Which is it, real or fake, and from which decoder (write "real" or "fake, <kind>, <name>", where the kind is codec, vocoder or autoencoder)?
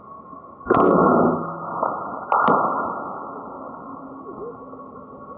real